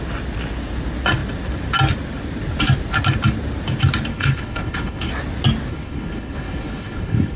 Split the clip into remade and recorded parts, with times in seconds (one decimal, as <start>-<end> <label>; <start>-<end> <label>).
0.0-4.1 recorded; 4.1-5.1 remade; 5.1-5.7 recorded; 5.7-7.4 remade